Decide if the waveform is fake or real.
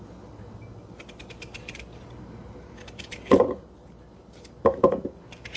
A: real